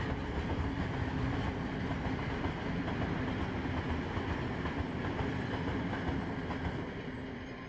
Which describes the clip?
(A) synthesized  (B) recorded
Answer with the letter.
B